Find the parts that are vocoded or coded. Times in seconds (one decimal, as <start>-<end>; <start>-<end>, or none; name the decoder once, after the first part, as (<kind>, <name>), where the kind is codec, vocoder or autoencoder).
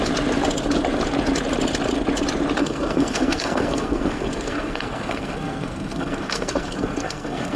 2.6-7.6 (codec, SNAC)